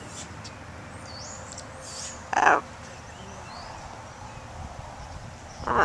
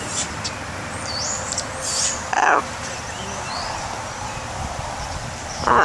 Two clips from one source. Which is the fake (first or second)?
second